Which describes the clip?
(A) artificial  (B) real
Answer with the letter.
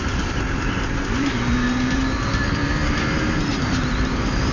A